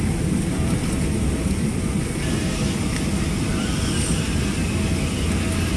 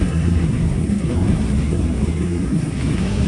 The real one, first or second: first